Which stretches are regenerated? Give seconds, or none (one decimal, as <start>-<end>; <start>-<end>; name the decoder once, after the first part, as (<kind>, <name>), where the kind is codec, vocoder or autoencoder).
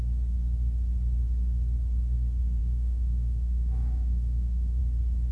2.6-4.8 (autoencoder, DAC-VAE)